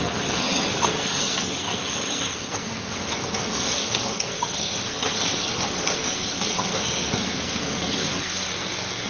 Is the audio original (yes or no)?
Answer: no